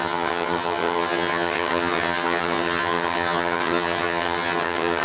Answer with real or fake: fake